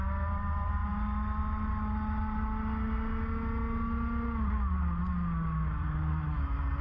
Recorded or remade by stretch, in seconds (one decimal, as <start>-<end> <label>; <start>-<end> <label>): 0.0-6.8 recorded